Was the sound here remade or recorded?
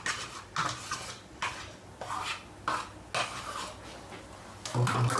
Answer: recorded